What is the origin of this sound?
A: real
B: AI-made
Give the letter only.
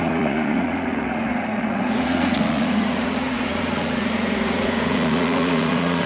B